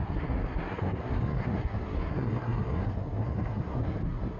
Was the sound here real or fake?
fake